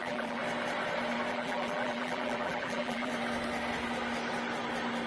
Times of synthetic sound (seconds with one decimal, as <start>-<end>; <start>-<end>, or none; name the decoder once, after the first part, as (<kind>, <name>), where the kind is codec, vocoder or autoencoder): 0.0-0.4 (vocoder, BigVGAN v2); 1.3-3.1

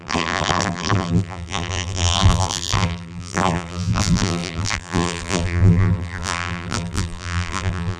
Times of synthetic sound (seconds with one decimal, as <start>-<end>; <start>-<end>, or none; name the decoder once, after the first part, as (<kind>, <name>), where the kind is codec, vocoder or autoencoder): 0.0-8.0 (vocoder, BigVGAN v2)

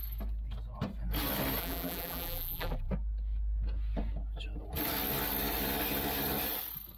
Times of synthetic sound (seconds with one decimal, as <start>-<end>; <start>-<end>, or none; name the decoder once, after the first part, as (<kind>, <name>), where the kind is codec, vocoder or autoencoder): 1.6-2.9 (vocoder, BigVGAN v2)

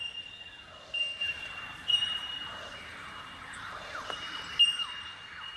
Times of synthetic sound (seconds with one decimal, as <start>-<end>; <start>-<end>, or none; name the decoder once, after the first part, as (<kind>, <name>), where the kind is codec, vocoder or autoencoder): 1.2-4.6 (vocoder, BigVGAN v2)

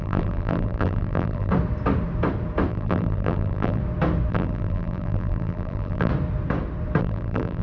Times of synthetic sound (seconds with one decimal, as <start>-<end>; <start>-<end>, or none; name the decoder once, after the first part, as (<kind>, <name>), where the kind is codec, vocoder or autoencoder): 0.0-1.5 (vocoder, BigVGAN v2); 2.7-3.8; 4.3-6.1; 7.0-7.6